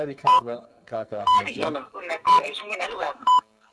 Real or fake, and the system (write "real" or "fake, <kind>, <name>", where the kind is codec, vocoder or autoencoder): fake, codec, SNAC